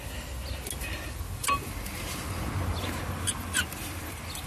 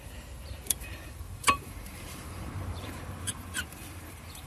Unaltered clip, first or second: first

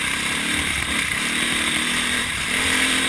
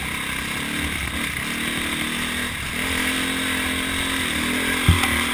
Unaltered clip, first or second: second